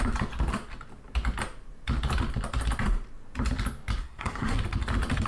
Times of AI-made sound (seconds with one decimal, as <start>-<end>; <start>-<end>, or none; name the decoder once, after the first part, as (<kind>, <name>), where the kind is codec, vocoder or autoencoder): 4.0-4.6 (codec, SNAC)